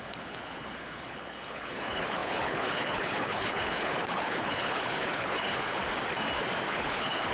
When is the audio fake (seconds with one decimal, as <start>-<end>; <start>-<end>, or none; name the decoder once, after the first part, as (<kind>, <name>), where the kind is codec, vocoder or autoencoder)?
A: 0.0-5.8 (codec, HILCodec); 6.7-7.3

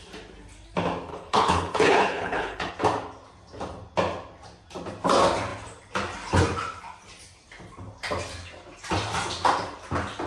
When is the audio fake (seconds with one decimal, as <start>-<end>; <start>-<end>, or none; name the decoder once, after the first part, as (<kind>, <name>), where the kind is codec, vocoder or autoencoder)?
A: 1.1-2.7 (codec, HILCodec)

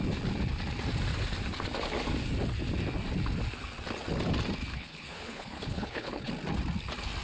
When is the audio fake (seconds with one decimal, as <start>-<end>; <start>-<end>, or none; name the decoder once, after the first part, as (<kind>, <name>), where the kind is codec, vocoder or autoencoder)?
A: 4.7-6.3 (codec, HILCodec)

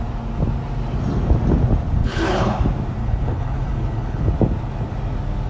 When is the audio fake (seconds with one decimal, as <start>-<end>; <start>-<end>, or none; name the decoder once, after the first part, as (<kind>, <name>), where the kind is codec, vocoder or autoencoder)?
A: 2.0-2.6 (codec, HILCodec); 3.0-4.3

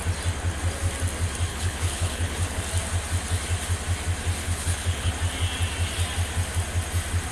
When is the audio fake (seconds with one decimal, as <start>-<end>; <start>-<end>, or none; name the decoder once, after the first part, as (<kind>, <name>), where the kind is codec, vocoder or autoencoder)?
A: 1.5-2.6 (codec, HILCodec); 4.4-5.1

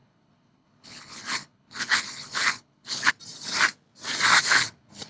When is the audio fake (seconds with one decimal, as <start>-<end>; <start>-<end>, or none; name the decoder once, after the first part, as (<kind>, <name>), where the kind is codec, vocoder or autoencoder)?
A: 0.0-3.1 (codec, HILCodec); 4.3-5.1

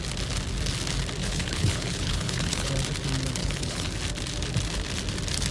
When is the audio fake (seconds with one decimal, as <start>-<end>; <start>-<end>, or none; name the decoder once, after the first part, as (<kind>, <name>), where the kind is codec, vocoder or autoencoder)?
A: 1.2-2.7 (codec, HILCodec); 3.4-3.9

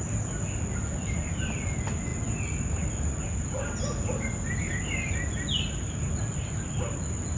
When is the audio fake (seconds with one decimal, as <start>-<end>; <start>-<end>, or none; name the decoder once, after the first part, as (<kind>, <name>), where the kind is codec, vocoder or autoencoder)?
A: none